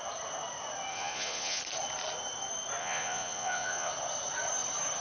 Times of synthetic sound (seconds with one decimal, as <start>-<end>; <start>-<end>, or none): 0.9-1.6; 2.8-3.9